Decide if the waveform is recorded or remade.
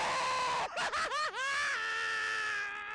remade